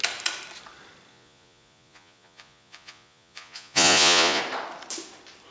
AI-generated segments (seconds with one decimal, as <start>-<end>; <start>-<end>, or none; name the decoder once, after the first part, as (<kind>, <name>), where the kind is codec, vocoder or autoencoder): 1.1-4.4 (vocoder, Vocos)